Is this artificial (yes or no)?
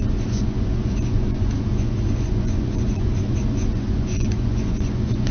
yes